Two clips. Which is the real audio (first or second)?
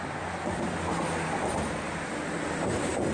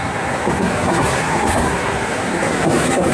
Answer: first